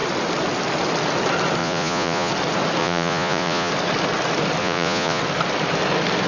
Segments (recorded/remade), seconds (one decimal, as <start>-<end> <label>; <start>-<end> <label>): 0.0-1.6 recorded; 1.6-2.3 remade; 2.3-2.8 recorded; 2.8-3.7 remade; 3.7-4.6 recorded; 4.6-5.2 remade; 5.2-6.3 recorded